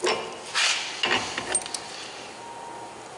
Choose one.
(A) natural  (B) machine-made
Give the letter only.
A